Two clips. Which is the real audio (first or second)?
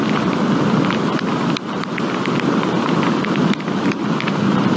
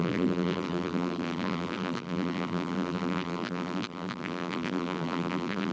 first